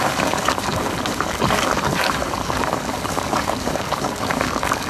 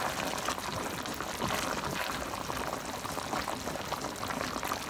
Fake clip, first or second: first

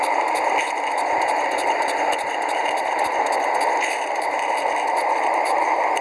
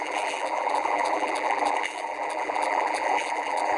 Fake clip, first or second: second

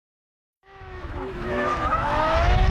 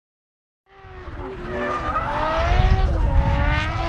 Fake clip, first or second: first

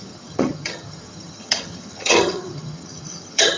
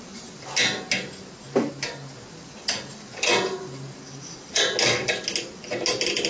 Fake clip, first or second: first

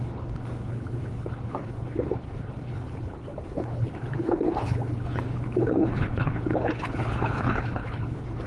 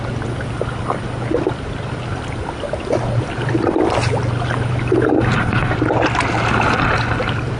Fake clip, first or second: first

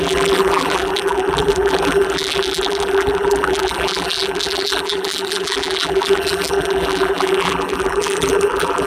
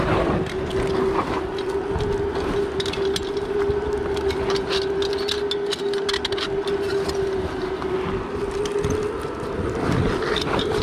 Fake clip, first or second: first